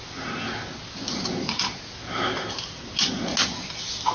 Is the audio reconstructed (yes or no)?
no